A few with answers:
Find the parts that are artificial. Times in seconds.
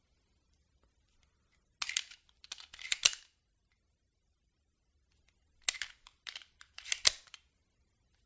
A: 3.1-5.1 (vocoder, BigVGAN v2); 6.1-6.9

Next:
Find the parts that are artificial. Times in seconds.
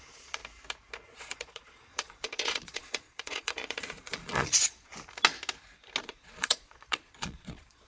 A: 0.0-0.4 (vocoder, Vocos); 1.1-4.9; 6.0-7.9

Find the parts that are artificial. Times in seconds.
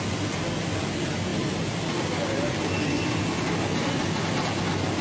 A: none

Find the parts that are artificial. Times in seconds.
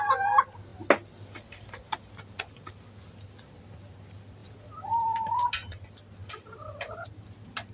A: none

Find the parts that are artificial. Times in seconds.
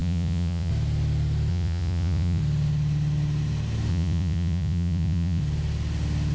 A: 0.0-0.7 (vocoder, Vocos); 1.5-2.4; 3.9-5.4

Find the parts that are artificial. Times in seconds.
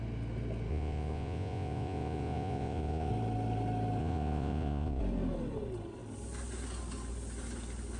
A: 0.7-3.1 (vocoder, Vocos); 4.0-5.0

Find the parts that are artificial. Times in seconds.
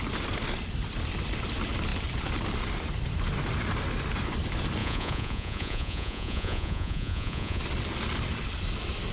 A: 4.8-7.6 (vocoder, Vocos)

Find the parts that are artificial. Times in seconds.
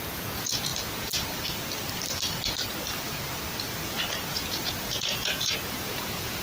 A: 0.0-0.7 (vocoder, Vocos); 4.5-6.4